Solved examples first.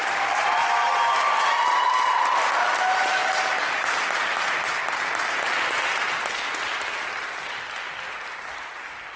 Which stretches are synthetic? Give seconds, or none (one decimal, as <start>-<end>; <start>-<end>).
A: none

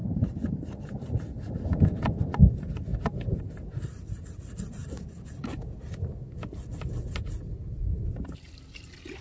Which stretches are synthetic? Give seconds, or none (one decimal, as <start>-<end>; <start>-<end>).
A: 0.0-1.2

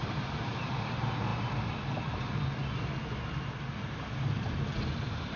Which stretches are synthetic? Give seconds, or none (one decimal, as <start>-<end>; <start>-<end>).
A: 0.0-0.7